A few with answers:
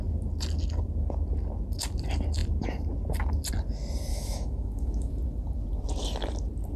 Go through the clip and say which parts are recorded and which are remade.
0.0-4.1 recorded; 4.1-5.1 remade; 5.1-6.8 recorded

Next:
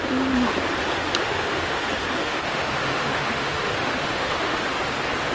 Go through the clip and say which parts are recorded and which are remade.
0.0-1.2 recorded; 1.2-1.8 remade; 1.8-2.2 recorded; 2.2-4.6 remade; 4.6-5.3 recorded

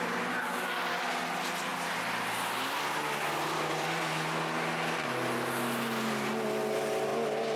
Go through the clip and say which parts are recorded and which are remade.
0.0-7.6 recorded

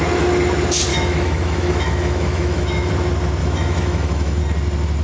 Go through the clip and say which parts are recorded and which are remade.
0.0-0.9 recorded; 0.9-2.9 remade; 2.9-3.4 recorded; 3.4-4.4 remade; 4.4-5.0 recorded

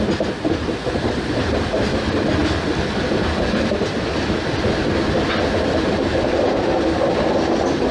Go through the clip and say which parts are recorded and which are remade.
0.0-7.9 recorded

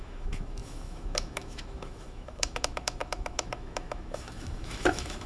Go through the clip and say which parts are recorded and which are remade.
0.0-5.3 remade

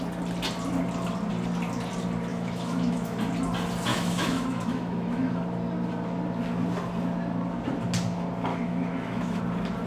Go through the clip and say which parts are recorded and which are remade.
0.0-2.3 recorded; 2.3-3.3 remade; 3.3-3.9 recorded; 3.9-5.4 remade; 5.4-8.5 recorded; 8.5-9.4 remade; 9.4-9.9 recorded